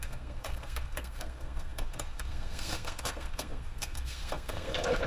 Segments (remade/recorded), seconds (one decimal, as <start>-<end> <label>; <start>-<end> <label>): 0.0-5.1 remade